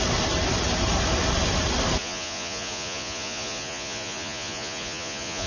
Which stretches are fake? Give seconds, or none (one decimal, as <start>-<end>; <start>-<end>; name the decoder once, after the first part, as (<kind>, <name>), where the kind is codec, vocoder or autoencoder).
2.0-5.5 (vocoder, Vocos)